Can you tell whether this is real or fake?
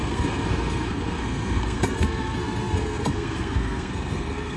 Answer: fake